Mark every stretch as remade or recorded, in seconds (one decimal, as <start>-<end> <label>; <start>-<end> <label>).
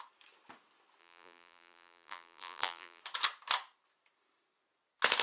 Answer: 0.0-1.0 recorded; 1.0-3.0 remade; 3.0-5.2 recorded